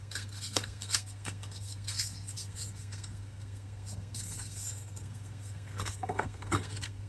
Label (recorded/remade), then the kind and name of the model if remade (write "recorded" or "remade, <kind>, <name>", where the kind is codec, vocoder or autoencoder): remade, codec, SNAC